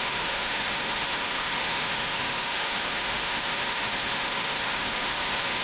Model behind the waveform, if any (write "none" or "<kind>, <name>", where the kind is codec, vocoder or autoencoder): autoencoder, DAC-VAE